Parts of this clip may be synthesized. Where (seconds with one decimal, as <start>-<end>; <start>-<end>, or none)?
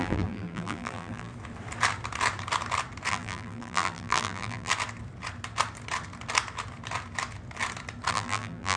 0.0-1.3; 3.1-4.7; 8.1-8.8